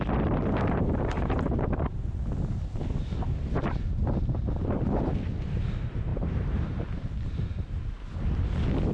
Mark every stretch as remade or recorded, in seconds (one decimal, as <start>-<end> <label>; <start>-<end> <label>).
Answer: 0.0-0.4 recorded; 0.4-1.8 remade; 1.8-6.1 recorded; 6.1-7.8 remade; 7.8-8.9 recorded